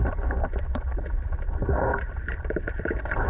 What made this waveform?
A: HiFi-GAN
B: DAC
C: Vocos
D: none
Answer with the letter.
D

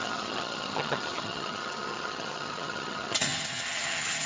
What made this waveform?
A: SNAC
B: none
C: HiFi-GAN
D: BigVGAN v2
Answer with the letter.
C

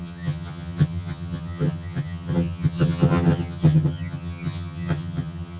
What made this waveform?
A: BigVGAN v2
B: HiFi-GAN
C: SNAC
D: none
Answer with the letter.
B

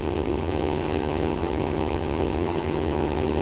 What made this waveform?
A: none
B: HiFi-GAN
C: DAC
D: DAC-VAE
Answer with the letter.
B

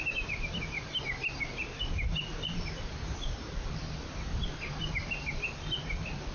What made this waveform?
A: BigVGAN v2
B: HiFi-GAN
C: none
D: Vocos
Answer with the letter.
C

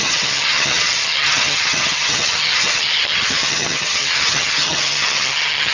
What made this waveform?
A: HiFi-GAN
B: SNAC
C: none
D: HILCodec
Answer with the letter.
A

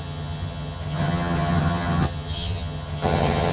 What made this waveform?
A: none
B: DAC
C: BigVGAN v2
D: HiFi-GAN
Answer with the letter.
D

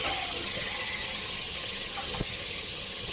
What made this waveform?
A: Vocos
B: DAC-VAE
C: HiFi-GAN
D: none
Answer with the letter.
C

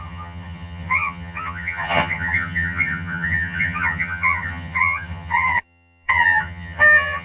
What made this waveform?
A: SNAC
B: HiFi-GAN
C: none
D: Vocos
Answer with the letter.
B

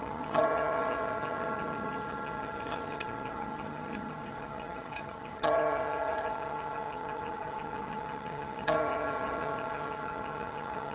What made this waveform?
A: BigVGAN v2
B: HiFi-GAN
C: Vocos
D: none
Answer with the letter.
B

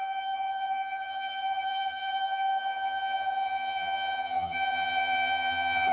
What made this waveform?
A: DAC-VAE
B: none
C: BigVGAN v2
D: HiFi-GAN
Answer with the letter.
D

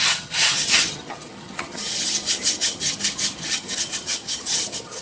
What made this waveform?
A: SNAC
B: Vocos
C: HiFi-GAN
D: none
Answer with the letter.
C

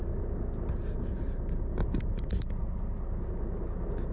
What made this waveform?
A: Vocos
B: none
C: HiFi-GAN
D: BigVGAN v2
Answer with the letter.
B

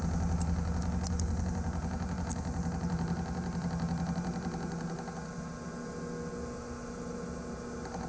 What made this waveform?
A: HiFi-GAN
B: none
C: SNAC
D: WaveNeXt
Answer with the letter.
B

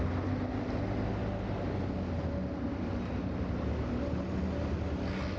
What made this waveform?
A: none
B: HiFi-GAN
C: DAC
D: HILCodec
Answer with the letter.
A